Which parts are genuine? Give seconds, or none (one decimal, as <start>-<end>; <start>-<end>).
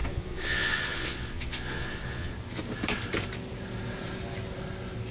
2.3-5.1